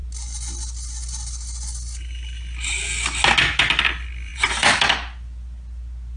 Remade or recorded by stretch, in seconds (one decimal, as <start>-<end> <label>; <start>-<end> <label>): 0.0-4.3 recorded; 4.3-4.8 remade; 4.8-6.2 recorded